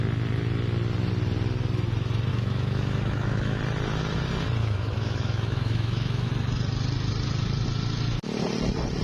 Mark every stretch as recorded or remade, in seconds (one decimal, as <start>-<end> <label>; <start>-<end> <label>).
0.0-2.3 recorded; 2.3-3.6 remade; 3.6-4.6 recorded; 4.6-6.3 remade; 6.3-9.0 recorded